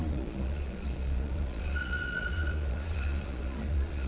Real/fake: fake